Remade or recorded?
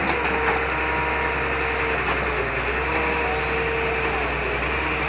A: recorded